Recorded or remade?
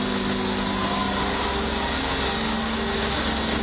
recorded